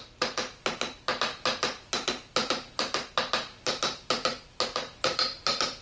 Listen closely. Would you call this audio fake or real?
real